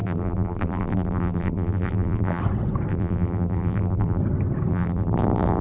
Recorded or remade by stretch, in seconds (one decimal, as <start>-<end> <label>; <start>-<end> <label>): 0.0-2.4 remade; 2.4-2.9 recorded; 2.9-4.2 remade; 4.2-4.7 recorded; 4.7-5.6 remade